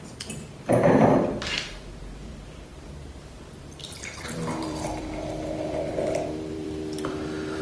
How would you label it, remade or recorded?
remade